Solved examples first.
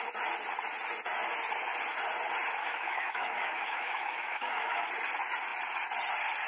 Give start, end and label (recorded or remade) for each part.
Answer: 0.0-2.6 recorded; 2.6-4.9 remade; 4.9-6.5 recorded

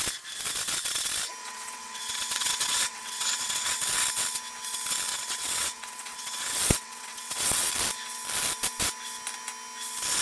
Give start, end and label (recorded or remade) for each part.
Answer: 0.0-1.4 recorded; 1.4-3.8 remade; 3.8-5.1 recorded; 5.1-7.7 remade; 7.7-10.2 recorded

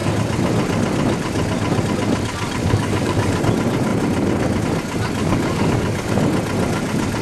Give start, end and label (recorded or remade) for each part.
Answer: 0.0-2.6 recorded; 2.6-3.4 remade; 3.4-5.2 recorded; 5.2-6.2 remade; 6.2-7.2 recorded

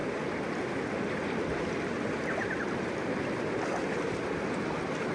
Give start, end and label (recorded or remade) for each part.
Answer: 0.0-5.1 recorded

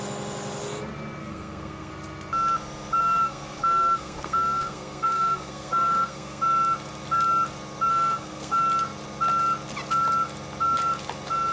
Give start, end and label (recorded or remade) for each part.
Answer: 0.0-1.2 recorded; 1.2-1.9 remade; 1.9-3.0 recorded; 3.0-6.4 remade; 6.4-7.9 recorded; 7.9-8.6 remade; 8.6-11.5 recorded